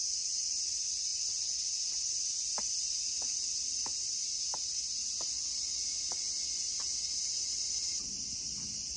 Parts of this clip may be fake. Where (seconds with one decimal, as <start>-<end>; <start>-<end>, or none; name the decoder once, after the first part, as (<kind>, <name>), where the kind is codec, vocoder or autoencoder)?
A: none